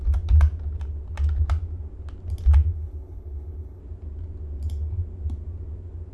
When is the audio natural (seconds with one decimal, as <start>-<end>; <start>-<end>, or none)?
0.0-2.7; 3.8-6.1